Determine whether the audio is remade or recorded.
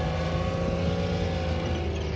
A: recorded